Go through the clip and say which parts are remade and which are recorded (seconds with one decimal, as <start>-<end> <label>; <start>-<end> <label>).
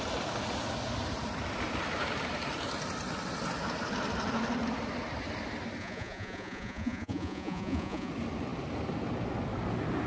0.0-5.8 recorded; 5.8-8.1 remade; 8.1-10.1 recorded